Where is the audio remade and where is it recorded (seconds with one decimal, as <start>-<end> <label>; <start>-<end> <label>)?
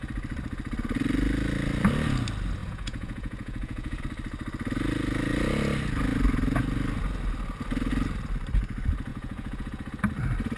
0.0-2.6 recorded; 2.6-4.0 remade; 4.0-9.1 recorded; 9.1-10.0 remade; 10.0-10.6 recorded